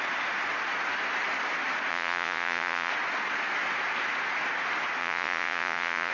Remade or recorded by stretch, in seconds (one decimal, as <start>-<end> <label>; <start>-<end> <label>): 0.0-1.9 recorded; 1.9-2.9 remade; 2.9-5.0 recorded; 5.0-6.1 remade